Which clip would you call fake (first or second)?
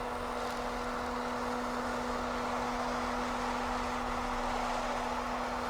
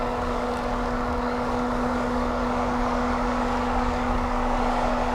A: second